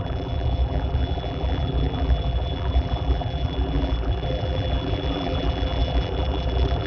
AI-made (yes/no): yes